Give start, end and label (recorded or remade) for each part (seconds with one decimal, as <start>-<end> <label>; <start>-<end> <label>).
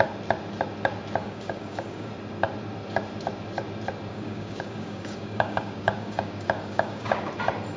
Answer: 0.0-1.2 recorded; 1.2-2.1 remade; 2.1-4.1 recorded; 4.1-7.3 remade; 7.3-7.8 recorded